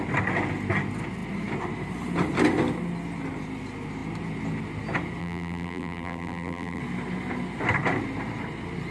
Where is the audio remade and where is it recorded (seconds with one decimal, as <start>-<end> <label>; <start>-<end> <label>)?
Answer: 0.0-5.2 recorded; 5.2-6.8 remade; 6.8-8.9 recorded